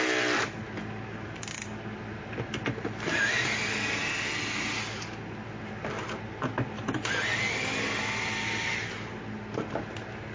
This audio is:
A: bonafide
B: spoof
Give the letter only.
A